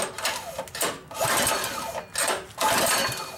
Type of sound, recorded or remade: recorded